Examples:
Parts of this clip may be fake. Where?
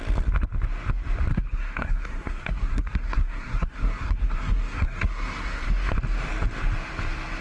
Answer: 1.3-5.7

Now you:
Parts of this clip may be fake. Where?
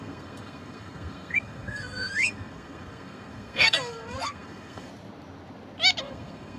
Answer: 0.0-4.9; 6.0-6.6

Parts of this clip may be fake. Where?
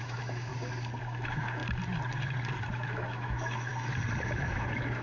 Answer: 0.0-0.5; 1.0-1.6; 2.7-3.7; 4.2-5.0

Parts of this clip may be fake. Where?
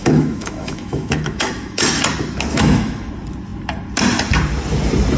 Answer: 0.0-2.0; 2.5-3.1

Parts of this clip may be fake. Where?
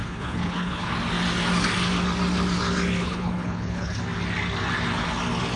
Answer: 0.0-0.9; 3.0-4.0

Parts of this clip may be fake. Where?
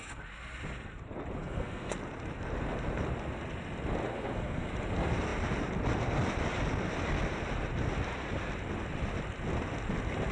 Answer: 1.4-1.9; 4.1-4.7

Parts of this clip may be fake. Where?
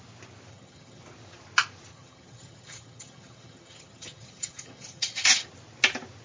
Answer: 0.5-1.0; 1.9-5.5